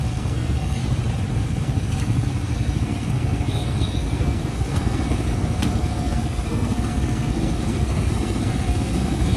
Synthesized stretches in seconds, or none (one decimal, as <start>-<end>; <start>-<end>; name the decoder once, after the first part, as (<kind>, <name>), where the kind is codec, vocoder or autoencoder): 0.0-0.8 (codec, SNAC); 1.3-9.4